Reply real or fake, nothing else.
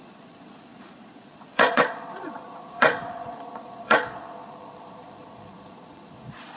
fake